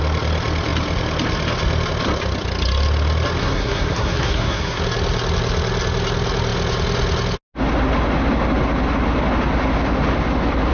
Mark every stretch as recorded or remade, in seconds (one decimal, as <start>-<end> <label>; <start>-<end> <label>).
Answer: 0.0-3.4 recorded; 3.4-4.8 remade; 4.8-10.7 recorded